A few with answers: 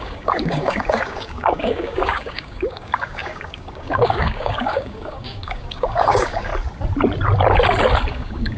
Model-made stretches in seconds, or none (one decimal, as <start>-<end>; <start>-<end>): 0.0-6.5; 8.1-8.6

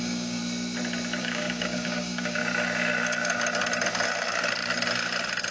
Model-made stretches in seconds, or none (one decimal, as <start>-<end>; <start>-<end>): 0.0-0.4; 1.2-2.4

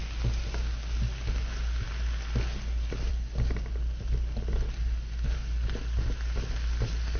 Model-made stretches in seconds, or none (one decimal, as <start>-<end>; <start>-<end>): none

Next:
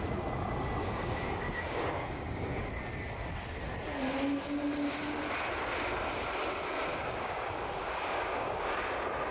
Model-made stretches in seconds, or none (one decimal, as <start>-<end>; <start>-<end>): 0.8-2.7; 6.9-8.7

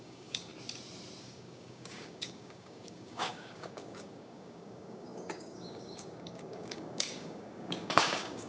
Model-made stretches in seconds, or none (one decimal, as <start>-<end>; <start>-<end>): 0.0-0.5; 1.2-8.5